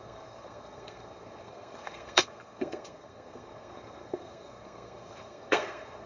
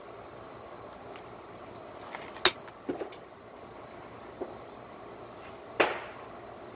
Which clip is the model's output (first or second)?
first